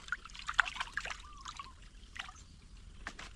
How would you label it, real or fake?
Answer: real